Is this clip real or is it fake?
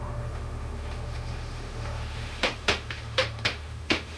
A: fake